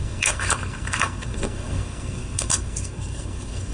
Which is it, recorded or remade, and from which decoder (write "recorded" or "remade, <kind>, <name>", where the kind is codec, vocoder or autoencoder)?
remade, codec, SNAC